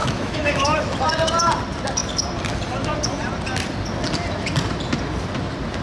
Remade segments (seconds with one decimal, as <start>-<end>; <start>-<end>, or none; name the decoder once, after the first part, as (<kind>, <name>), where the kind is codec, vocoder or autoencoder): 0.0-0.9 (autoencoder, DAC-VAE)